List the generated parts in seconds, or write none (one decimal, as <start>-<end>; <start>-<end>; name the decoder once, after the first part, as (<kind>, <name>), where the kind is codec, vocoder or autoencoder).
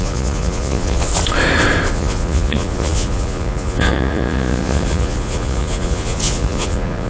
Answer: 0.0-1.1 (vocoder, Vocos); 1.9-7.1